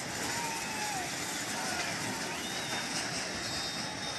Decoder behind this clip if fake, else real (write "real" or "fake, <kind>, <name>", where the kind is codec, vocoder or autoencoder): real